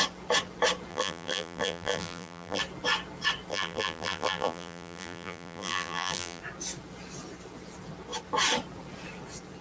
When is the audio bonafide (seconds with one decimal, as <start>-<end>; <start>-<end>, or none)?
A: 0.0-0.9; 2.6-3.5; 6.4-9.6